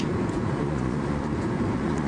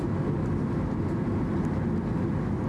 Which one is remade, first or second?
first